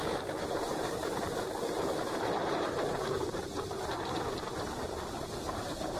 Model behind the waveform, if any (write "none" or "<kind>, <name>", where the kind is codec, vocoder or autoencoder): vocoder, BigVGAN v2